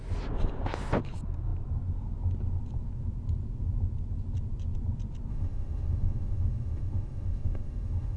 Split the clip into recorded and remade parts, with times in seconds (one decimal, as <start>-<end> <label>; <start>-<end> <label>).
0.0-5.3 recorded; 5.3-8.2 remade